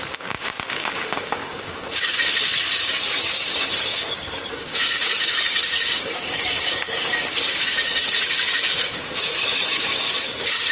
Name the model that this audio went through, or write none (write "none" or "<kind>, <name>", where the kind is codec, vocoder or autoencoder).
codec, DAC